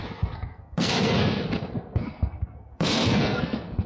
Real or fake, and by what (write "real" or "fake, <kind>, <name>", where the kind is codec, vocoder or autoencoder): fake, codec, SNAC